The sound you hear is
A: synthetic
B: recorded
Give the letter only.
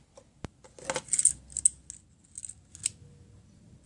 B